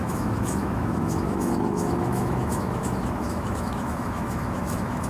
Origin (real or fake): fake